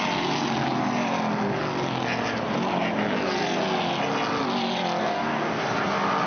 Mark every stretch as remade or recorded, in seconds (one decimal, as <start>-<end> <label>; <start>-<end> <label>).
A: 0.0-5.0 recorded; 5.0-5.6 remade; 5.6-6.3 recorded